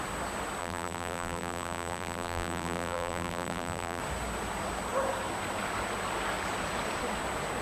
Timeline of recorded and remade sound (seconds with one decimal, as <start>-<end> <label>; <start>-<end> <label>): 0.0-0.6 recorded; 0.6-4.0 remade; 4.0-7.6 recorded